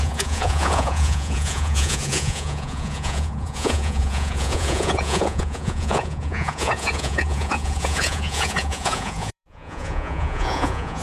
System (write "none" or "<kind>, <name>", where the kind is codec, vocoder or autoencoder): vocoder, Vocos